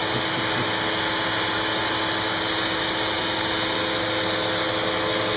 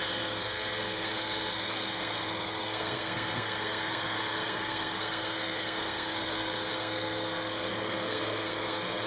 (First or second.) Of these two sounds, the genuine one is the first